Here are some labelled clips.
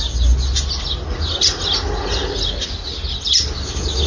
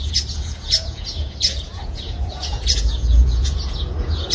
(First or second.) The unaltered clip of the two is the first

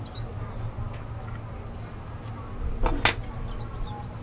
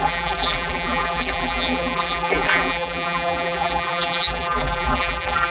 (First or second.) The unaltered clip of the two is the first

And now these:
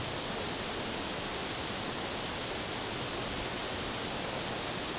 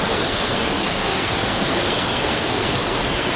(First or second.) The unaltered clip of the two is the first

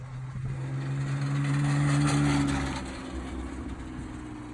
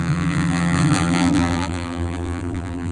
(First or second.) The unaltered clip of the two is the first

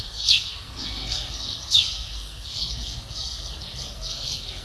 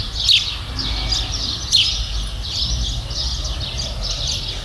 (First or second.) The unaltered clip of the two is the second